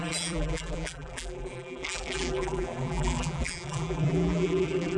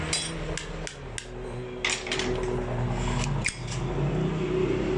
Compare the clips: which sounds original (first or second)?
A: second